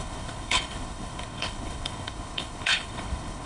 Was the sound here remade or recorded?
remade